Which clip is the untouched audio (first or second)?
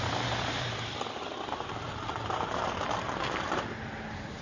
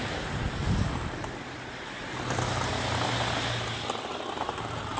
second